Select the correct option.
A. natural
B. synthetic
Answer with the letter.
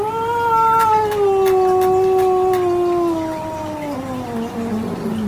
A